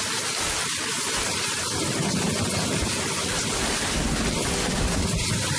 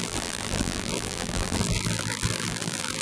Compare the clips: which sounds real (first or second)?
first